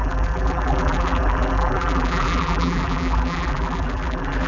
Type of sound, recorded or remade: remade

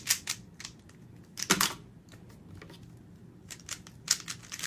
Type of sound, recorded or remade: recorded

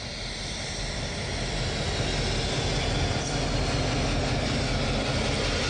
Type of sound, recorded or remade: recorded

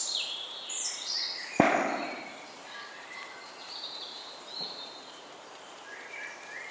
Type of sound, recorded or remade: remade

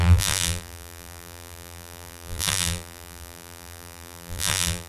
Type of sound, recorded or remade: remade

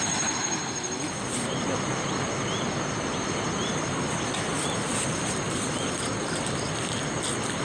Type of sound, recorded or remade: recorded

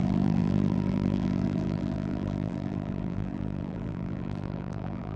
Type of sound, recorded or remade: remade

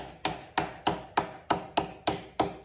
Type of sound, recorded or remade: recorded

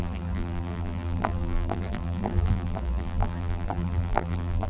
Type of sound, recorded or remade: remade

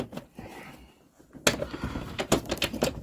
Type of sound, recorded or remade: recorded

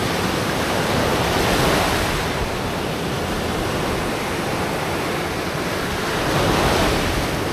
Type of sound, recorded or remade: recorded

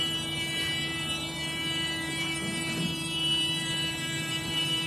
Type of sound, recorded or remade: remade